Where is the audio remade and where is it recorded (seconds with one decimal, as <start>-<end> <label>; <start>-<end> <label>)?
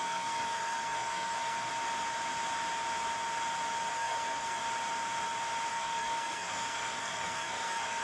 0.0-1.7 remade; 1.7-3.9 recorded; 3.9-4.6 remade; 4.6-5.7 recorded; 5.7-8.0 remade